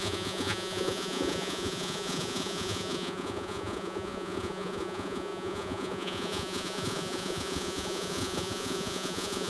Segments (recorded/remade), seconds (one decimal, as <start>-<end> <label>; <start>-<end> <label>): 0.0-9.5 remade